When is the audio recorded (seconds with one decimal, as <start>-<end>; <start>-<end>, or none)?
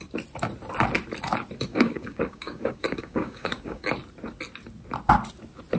0.0-1.7; 3.9-5.8